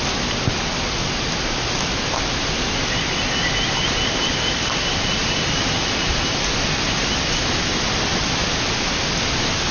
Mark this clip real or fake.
real